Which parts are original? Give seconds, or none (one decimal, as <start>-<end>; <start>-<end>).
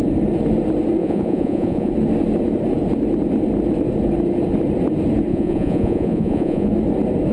0.0-1.0; 1.9-5.3; 6.7-7.3